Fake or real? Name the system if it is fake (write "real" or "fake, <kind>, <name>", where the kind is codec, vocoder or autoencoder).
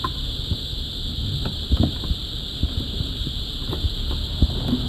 real